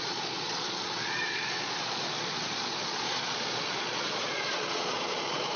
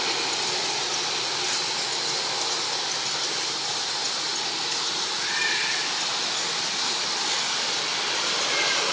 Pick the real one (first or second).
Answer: second